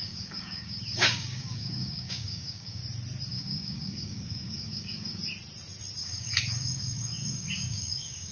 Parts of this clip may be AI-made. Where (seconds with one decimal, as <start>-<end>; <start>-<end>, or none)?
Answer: 0.0-2.8; 3.3-5.2; 6.0-8.3

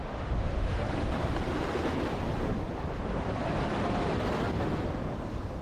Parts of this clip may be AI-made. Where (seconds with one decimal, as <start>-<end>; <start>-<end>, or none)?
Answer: 0.0-0.8